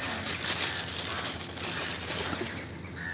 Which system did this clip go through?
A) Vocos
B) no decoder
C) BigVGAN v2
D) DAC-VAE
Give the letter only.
B